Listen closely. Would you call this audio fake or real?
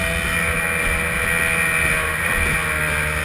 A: real